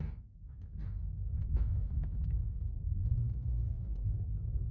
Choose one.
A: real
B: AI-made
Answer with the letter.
B